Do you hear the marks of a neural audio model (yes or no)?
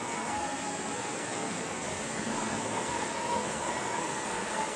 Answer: yes